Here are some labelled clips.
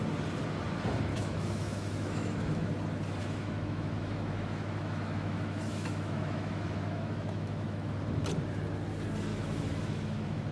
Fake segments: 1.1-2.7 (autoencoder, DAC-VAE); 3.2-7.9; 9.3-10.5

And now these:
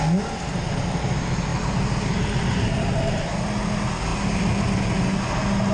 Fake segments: none

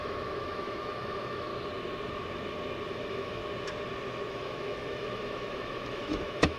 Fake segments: 0.0-1.5 (autoencoder, DAC-VAE); 2.9-3.4; 4.3-6.6